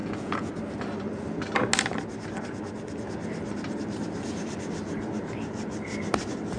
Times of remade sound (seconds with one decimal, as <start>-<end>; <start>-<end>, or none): 0.0-0.5